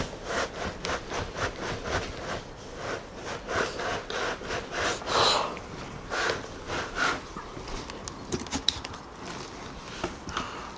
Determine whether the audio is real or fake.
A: real